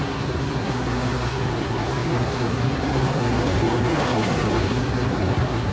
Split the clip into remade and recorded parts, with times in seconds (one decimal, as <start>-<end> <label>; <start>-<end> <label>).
0.0-5.7 remade